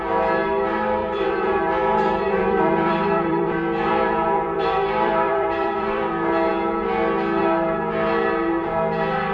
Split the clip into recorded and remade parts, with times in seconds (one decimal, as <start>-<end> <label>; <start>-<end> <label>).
0.0-1.0 recorded; 1.0-6.1 remade; 6.1-9.3 recorded